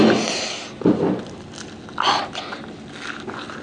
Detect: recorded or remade recorded